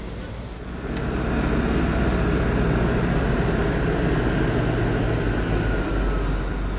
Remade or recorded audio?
recorded